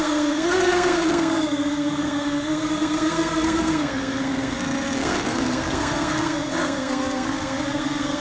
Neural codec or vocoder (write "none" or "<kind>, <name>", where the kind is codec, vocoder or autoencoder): codec, SNAC